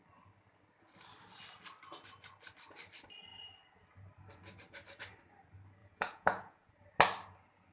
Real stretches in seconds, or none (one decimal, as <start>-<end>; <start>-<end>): 0.0-5.8; 6.7-7.7